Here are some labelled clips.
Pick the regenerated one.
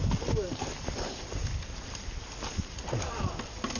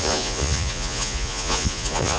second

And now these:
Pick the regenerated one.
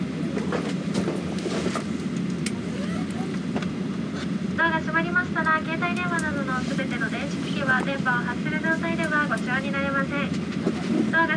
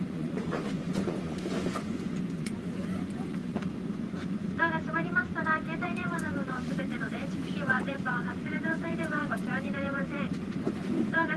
second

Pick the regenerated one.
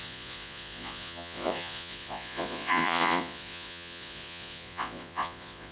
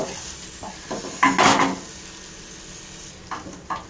first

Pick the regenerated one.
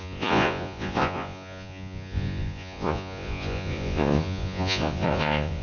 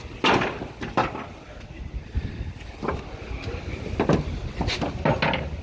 first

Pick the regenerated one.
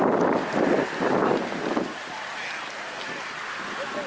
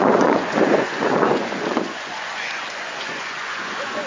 second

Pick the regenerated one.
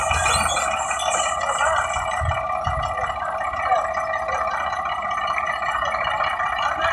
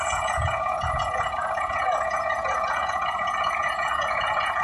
second